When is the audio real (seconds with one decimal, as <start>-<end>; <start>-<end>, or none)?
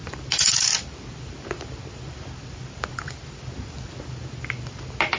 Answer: 0.0-5.2